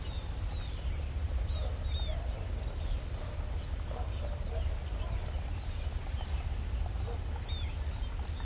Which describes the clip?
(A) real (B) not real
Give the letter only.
A